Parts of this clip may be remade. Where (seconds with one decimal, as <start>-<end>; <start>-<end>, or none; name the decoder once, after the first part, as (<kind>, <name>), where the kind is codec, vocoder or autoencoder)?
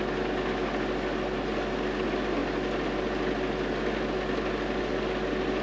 none